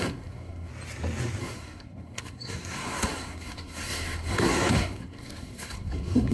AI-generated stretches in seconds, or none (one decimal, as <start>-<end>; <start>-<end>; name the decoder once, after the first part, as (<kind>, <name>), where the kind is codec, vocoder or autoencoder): 0.0-0.7 (codec, SNAC); 1.4-6.3